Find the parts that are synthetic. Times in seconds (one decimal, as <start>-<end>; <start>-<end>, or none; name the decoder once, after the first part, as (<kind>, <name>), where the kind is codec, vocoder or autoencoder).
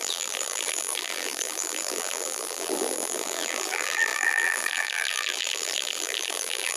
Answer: 0.0-6.8 (vocoder, BigVGAN v2)